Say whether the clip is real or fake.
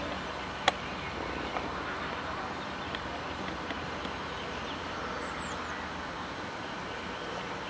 real